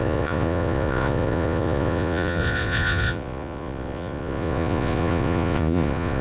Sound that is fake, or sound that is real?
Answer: fake